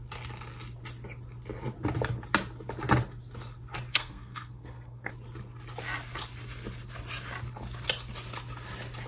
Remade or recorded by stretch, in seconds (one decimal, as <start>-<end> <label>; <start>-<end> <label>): 0.0-3.9 recorded; 3.9-5.1 remade; 5.1-9.1 recorded